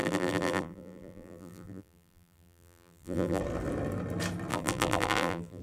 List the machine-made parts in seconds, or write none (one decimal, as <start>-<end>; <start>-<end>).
0.0-3.4; 4.5-5.6